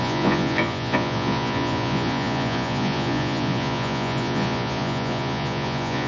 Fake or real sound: fake